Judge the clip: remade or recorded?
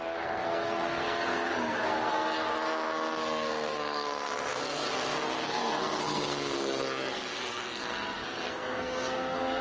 remade